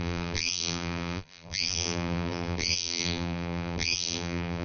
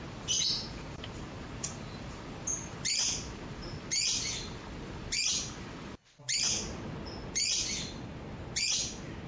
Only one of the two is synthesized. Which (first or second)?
first